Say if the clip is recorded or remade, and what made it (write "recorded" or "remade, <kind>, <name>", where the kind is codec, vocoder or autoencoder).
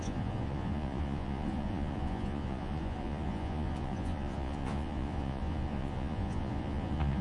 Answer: remade, vocoder, Vocos